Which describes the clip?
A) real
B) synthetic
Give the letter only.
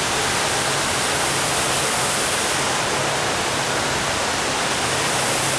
B